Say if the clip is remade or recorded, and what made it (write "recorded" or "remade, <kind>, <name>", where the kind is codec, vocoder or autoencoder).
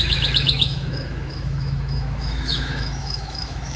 remade, autoencoder, DAC-VAE